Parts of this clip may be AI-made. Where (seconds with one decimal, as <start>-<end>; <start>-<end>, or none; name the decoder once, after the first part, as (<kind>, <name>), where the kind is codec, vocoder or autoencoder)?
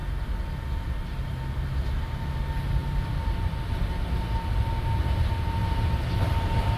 2.8-3.7 (vocoder, BigVGAN v2)